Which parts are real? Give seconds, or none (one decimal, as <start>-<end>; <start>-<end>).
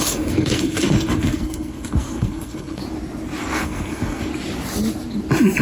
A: 2.8-3.4; 4.3-5.6